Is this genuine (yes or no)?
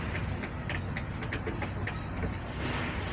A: yes